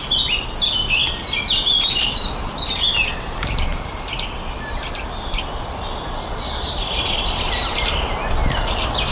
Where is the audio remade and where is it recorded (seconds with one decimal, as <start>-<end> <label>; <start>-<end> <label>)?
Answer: 0.0-1.0 recorded; 1.0-2.6 remade; 2.6-3.7 recorded; 3.7-4.9 remade; 4.9-9.1 recorded